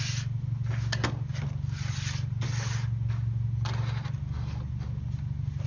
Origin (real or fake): real